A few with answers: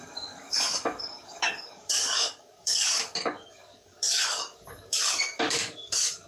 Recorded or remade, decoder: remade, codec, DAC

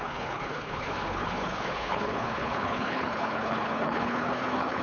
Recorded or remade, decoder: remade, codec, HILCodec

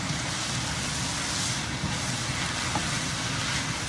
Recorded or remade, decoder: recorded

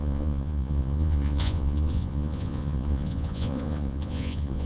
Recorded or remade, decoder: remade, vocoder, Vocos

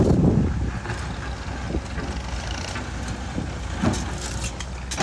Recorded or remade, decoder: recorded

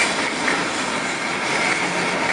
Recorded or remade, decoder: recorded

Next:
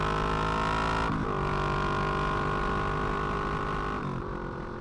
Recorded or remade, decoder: recorded